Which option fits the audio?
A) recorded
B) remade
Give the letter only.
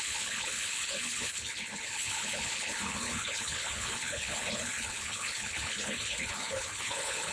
B